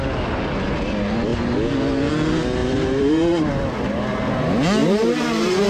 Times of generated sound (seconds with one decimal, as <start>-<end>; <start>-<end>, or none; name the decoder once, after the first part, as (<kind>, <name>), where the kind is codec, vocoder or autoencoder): 2.6-3.5 (vocoder, BigVGAN v2); 4.8-5.7